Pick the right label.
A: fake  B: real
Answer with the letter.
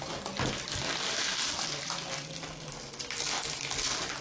B